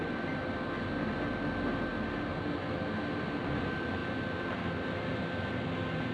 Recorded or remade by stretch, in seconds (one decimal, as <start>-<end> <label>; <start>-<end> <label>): 0.0-6.1 recorded